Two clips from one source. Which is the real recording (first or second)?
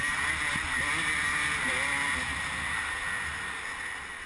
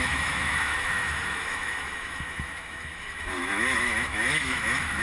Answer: first